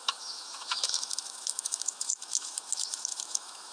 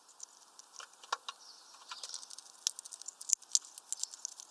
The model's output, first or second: first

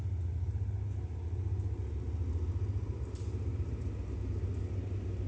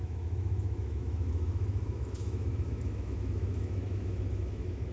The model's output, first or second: second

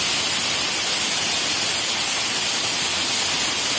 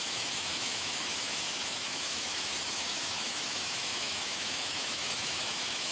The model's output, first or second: second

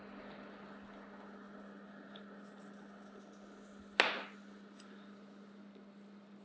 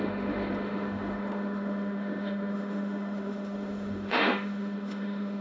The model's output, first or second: second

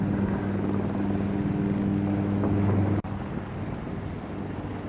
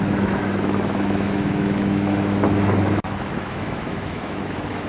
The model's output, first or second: second